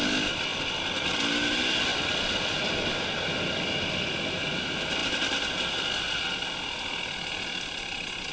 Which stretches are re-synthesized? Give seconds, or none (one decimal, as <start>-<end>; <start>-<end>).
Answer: none